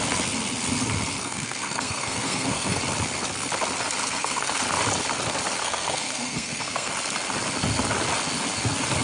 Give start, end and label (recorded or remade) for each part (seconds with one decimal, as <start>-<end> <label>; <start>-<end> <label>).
0.0-1.2 recorded; 1.2-2.8 remade; 2.8-4.0 recorded; 4.0-4.6 remade; 4.6-5.6 recorded; 5.6-6.9 remade; 6.9-9.0 recorded